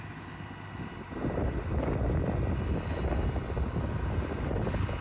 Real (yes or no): yes